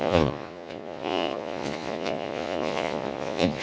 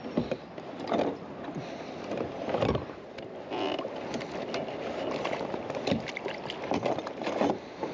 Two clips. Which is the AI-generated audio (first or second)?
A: first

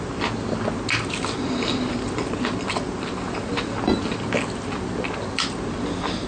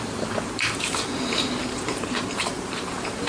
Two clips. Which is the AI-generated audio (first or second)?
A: second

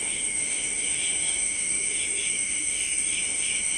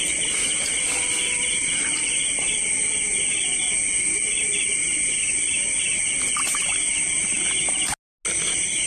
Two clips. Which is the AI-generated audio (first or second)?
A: first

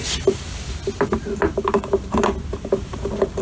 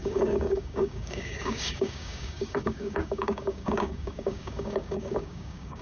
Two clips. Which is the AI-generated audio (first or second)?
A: second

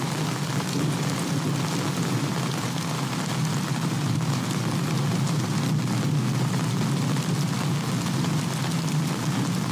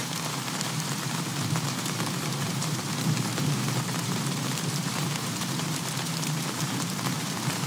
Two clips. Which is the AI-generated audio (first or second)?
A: second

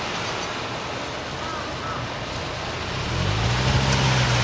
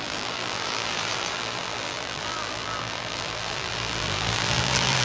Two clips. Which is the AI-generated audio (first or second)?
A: second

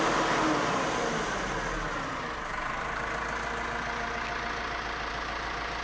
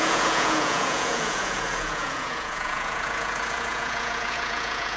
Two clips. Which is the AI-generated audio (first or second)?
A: second